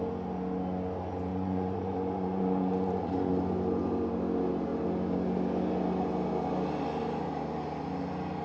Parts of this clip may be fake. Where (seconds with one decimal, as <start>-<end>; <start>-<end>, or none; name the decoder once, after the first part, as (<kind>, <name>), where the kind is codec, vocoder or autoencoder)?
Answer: 1.3-3.3 (vocoder, Vocos)